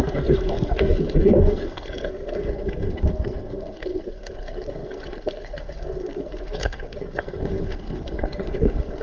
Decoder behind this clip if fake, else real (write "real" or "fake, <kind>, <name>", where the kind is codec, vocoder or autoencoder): fake, codec, SNAC